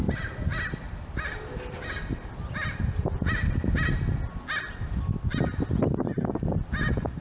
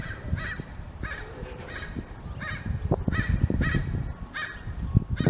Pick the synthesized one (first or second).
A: second